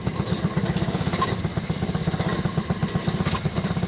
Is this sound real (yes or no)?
yes